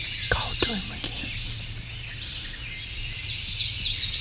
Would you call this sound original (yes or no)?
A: yes